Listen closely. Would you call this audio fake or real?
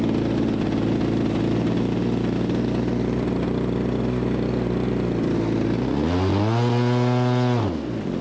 real